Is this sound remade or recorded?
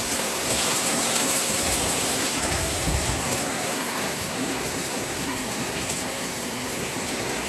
remade